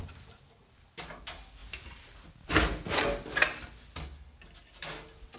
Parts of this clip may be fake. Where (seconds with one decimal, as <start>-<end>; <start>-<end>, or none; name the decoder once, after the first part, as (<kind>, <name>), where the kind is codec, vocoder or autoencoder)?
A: none